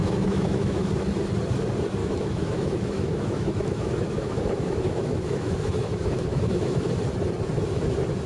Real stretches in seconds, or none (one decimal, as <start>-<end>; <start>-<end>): 0.9-2.0; 6.9-8.3